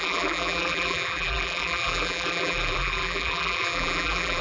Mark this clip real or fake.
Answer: fake